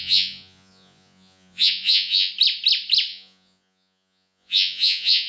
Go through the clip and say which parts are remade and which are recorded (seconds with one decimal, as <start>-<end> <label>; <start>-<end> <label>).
0.0-2.3 remade; 2.3-3.1 recorded; 3.1-5.3 remade